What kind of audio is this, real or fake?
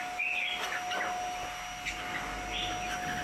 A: real